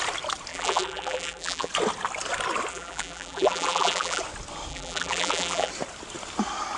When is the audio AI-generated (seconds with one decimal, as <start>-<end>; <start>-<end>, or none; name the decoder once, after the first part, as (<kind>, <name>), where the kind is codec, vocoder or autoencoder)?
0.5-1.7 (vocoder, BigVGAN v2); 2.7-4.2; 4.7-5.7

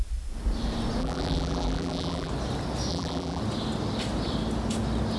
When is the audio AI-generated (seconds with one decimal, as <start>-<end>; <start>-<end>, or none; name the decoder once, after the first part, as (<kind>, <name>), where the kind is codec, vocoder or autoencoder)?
1.0-2.3 (vocoder, BigVGAN v2); 2.9-3.4

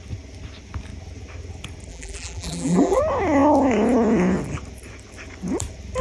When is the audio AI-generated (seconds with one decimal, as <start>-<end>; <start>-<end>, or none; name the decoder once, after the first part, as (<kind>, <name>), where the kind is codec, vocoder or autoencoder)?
1.9-3.0 (vocoder, BigVGAN v2)

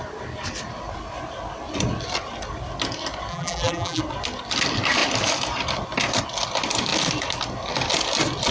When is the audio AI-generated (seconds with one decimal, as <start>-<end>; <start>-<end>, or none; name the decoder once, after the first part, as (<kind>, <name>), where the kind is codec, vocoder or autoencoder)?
3.3-4.0 (vocoder, BigVGAN v2)

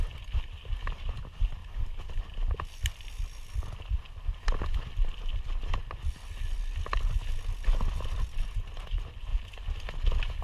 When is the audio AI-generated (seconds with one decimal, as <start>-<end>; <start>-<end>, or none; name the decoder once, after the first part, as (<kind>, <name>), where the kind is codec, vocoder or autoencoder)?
1.6-2.2 (vocoder, BigVGAN v2)

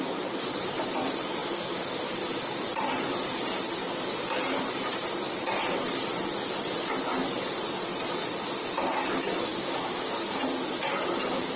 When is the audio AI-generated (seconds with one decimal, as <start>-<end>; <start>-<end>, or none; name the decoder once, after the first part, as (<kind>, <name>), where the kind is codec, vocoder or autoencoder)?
0.0-1.4 (vocoder, BigVGAN v2); 2.8-9.5; 10.9-11.6